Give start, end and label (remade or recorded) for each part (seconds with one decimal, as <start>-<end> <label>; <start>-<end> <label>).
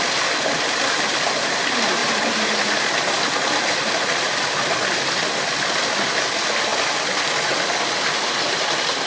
0.0-2.0 recorded; 2.0-2.8 remade; 2.8-9.1 recorded